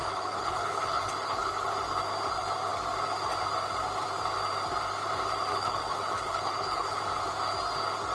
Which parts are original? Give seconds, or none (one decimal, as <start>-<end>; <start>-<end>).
1.7-5.5; 7.0-8.1